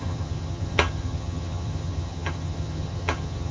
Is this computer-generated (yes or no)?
yes